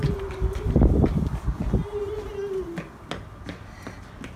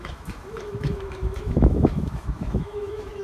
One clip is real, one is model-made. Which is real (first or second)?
first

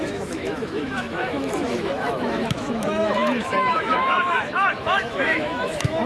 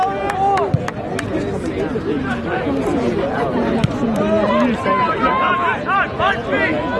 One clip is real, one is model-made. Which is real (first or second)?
second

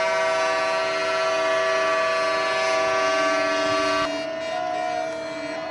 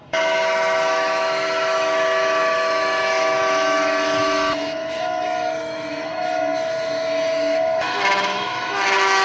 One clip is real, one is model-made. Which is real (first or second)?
first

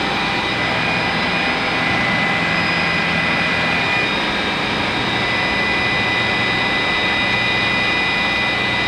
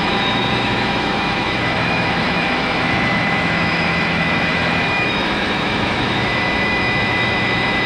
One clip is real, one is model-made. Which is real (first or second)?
first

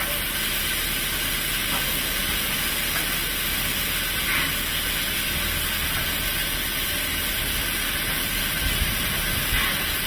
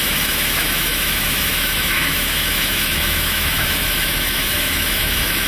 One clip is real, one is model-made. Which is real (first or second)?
first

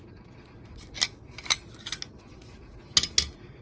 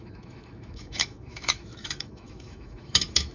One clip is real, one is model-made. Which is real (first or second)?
first